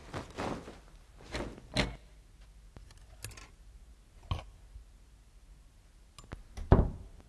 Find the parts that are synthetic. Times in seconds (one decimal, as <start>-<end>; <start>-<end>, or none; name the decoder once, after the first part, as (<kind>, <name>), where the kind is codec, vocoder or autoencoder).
none